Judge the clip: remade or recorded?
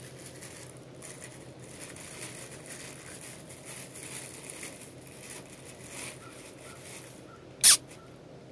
recorded